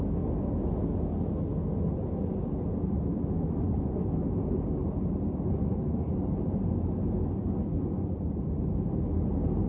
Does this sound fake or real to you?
real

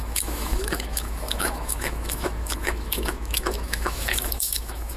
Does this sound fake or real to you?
fake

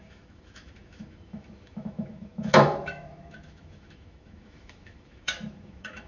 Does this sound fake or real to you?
fake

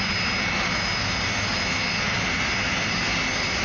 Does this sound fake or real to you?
real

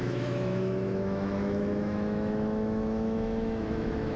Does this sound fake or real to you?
fake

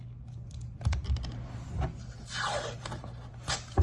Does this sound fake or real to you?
real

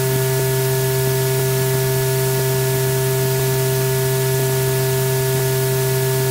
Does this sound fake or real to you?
real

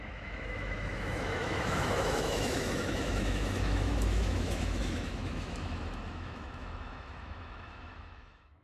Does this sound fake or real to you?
fake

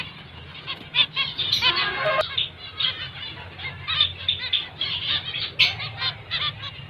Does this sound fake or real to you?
real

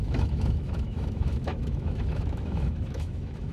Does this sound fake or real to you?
fake